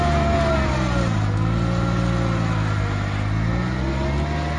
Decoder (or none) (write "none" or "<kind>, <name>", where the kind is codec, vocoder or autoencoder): none